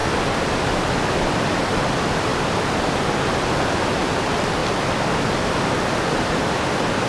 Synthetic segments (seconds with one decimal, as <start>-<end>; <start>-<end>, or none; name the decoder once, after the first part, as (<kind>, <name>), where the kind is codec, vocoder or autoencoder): 2.3-3.2 (vocoder, BigVGAN v2); 4.6-6.3